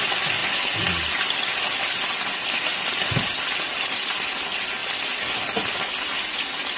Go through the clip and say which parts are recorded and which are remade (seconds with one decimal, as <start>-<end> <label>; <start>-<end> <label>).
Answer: 0.0-6.8 recorded